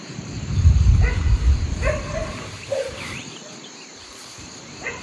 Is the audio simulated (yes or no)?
yes